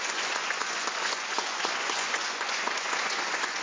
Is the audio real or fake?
fake